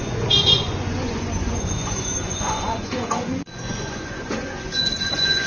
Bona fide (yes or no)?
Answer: no